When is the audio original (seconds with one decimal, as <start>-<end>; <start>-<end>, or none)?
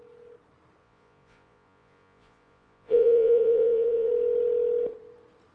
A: 0.0-0.8; 4.1-5.5